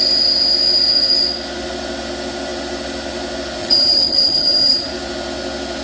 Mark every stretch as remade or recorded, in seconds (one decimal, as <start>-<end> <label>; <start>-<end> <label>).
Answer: 0.0-3.6 recorded; 3.6-4.9 remade; 4.9-5.8 recorded